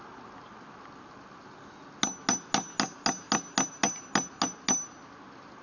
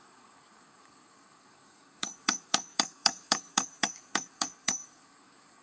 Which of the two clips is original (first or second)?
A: first